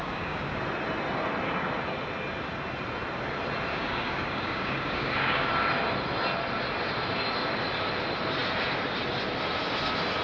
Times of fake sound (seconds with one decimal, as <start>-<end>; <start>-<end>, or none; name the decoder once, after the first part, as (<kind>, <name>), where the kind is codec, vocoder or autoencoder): 0.0-0.6 (codec, DAC); 3.7-5.5